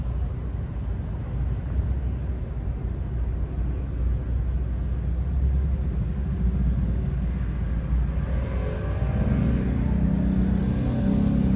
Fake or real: real